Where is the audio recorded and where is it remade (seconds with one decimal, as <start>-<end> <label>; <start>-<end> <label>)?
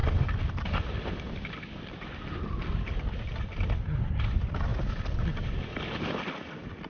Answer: 0.0-6.9 recorded